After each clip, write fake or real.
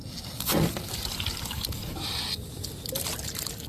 real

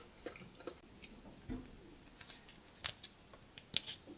real